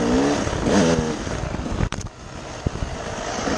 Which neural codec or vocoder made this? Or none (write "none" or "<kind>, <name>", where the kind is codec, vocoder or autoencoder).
vocoder, BigVGAN v2